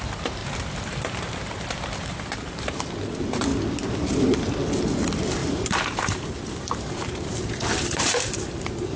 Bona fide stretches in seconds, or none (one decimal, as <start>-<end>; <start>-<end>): 0.0-0.4; 2.9-5.4